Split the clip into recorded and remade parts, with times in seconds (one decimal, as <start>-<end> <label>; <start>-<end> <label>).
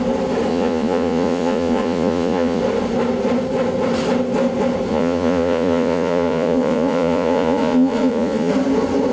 0.0-0.5 recorded; 0.5-2.6 remade; 2.6-4.9 recorded; 4.9-8.5 remade; 8.5-9.1 recorded